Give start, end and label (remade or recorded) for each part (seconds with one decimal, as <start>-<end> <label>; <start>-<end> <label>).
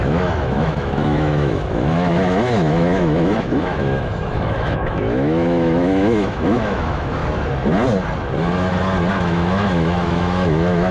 0.0-7.2 remade; 7.2-9.1 recorded; 9.1-10.9 remade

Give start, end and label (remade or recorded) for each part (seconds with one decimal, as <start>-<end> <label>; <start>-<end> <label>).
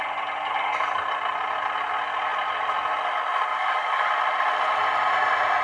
0.0-3.5 recorded; 3.5-4.1 remade; 4.1-5.6 recorded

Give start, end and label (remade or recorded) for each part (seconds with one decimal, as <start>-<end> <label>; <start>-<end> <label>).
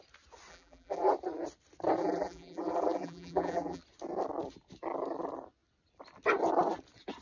0.0-0.5 recorded; 0.5-1.1 remade; 1.1-2.0 recorded; 2.0-3.8 remade; 3.8-7.2 recorded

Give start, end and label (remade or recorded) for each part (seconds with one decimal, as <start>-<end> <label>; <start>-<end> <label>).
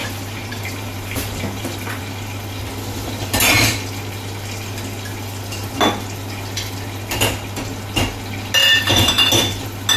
0.0-2.0 remade; 2.0-8.6 recorded; 8.6-9.3 remade; 9.3-10.0 recorded